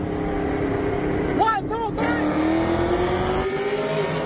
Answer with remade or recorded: recorded